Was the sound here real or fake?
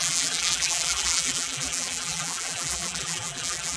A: fake